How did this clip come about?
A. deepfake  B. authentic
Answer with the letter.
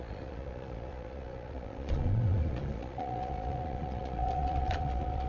A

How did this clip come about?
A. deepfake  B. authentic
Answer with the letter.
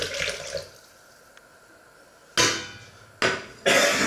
B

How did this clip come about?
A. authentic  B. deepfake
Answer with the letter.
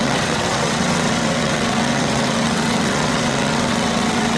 B